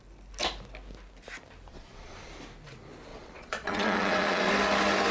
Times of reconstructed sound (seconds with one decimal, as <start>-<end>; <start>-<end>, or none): 1.7-2.3; 3.1-4.5